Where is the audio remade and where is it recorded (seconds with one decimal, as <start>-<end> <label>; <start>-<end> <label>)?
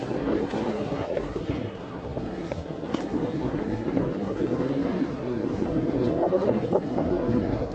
0.0-7.7 remade